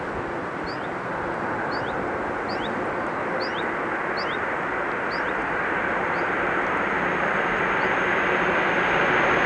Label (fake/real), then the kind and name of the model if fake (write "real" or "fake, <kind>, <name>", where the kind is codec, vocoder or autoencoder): real